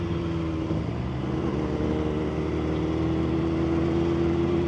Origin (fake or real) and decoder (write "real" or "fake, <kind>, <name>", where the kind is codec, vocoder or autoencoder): real